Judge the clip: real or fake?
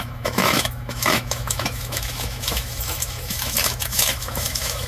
fake